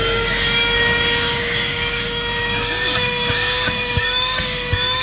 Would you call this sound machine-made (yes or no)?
yes